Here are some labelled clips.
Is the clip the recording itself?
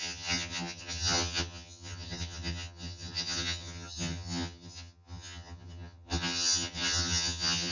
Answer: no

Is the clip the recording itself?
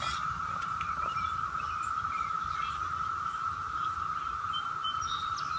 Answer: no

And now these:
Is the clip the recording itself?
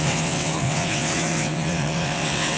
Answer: no